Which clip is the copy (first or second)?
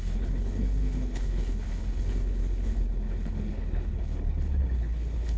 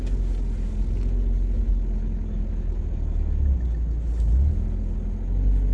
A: first